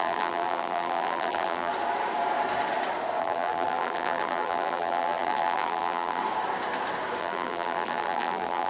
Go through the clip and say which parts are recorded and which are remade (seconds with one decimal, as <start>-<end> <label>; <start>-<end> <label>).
0.0-1.7 remade; 1.7-3.2 recorded; 3.2-6.2 remade; 6.2-7.2 recorded; 7.2-8.7 remade